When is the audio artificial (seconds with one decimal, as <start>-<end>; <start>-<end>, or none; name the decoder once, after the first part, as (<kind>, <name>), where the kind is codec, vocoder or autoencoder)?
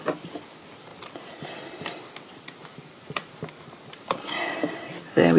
0.0-5.4 (vocoder, BigVGAN v2)